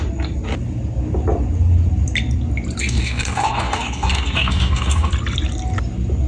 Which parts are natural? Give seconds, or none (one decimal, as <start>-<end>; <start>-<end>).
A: 0.0-2.8; 5.1-6.3